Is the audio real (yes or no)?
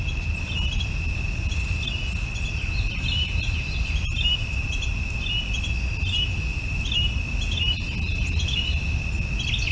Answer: yes